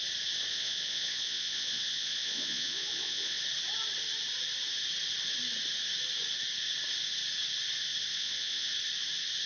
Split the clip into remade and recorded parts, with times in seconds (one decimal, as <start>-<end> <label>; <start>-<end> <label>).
0.0-0.5 recorded; 0.5-3.4 remade; 3.4-8.1 recorded; 8.1-8.7 remade; 8.7-9.5 recorded